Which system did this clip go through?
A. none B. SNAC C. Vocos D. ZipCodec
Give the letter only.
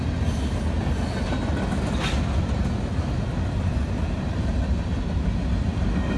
A